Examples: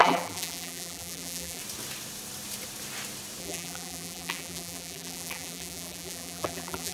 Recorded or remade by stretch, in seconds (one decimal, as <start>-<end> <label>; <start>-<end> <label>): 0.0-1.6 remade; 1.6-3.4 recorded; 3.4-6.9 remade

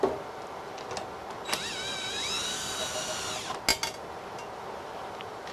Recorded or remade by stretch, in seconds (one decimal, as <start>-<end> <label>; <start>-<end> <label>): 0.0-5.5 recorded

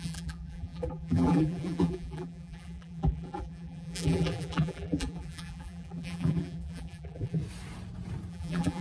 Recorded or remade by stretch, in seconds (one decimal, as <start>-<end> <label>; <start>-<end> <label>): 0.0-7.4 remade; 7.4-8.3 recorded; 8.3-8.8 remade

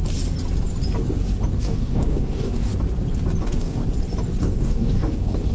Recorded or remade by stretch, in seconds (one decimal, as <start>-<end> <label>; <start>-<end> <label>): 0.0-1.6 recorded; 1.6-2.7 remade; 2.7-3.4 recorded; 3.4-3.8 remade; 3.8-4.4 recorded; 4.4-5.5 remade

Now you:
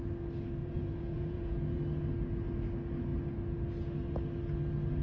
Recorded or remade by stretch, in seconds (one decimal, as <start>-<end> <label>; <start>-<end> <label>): 0.0-0.6 recorded; 0.6-1.8 remade; 1.8-5.0 recorded

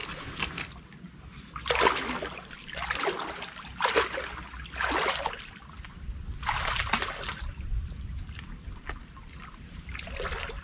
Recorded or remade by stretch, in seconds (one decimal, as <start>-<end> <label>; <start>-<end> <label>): 0.0-10.6 recorded